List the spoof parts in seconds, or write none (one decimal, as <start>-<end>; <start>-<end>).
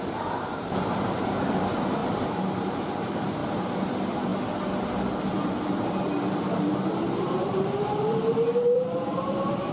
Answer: 0.0-4.3; 5.3-9.7